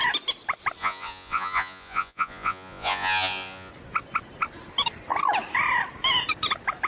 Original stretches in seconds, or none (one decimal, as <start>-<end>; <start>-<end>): 0.0-0.8; 3.7-6.9